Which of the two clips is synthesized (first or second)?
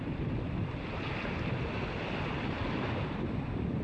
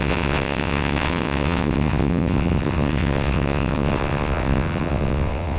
second